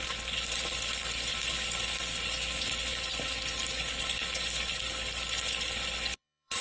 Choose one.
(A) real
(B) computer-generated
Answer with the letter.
B